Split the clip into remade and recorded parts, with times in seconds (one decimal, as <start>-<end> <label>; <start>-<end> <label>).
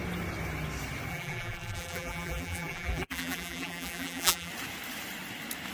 0.0-1.1 recorded; 1.1-4.5 remade; 4.5-5.7 recorded